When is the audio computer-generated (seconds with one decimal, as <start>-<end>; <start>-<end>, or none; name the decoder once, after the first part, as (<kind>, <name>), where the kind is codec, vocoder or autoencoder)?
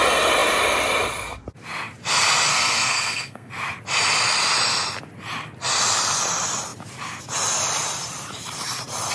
2.5-3.5 (codec, SNAC)